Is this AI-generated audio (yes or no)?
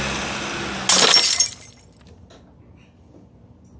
no